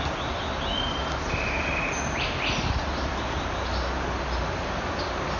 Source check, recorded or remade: recorded